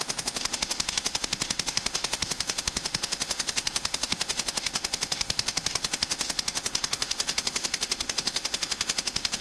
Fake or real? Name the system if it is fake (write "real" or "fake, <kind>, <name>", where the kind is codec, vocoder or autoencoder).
fake, autoencoder, DAC-VAE